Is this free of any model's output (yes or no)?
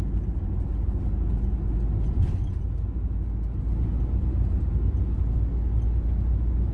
yes